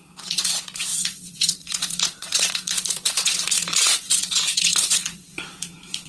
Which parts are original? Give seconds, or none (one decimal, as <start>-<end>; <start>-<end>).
none